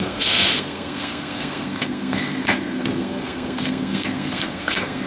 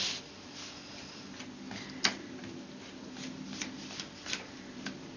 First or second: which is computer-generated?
first